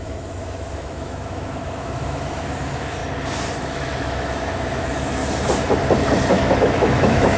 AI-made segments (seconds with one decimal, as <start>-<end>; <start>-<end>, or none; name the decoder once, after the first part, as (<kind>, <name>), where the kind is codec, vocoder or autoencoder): 0.0-3.0 (autoencoder, DAC-VAE); 3.6-5.2; 6.3-7.4